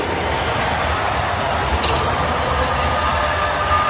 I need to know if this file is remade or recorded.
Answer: recorded